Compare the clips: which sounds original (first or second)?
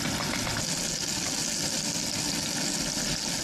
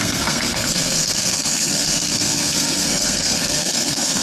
first